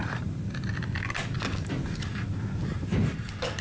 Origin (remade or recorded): recorded